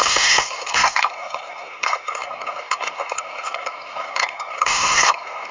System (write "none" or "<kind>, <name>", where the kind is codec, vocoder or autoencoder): codec, SNAC